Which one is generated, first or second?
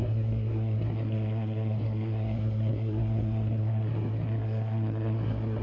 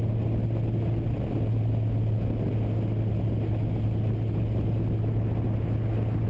first